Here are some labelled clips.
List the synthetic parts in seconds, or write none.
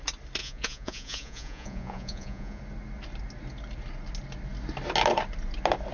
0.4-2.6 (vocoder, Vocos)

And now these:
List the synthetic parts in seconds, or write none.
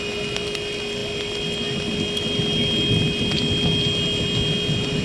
none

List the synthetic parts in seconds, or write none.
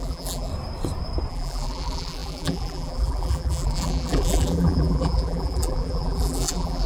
0.0-0.5 (vocoder, BigVGAN v2); 1.3-6.9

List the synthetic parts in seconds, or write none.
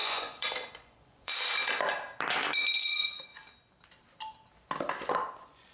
0.0-1.3 (vocoder, Vocos); 2.3-3.3; 5.3-5.7